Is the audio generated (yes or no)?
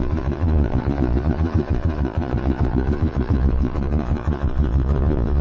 yes